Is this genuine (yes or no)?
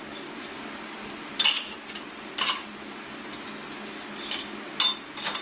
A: yes